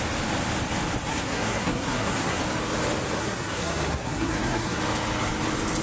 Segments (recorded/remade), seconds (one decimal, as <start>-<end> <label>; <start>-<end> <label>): 0.0-1.1 recorded; 1.1-2.4 remade; 2.4-3.2 recorded; 3.2-4.8 remade; 4.8-5.8 recorded